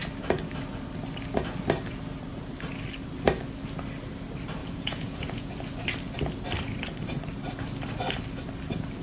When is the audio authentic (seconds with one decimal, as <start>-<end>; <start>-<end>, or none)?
0.0-4.6; 5.6-9.0